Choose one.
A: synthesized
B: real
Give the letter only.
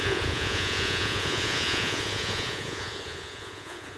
A